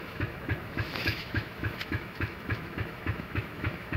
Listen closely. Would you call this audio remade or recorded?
remade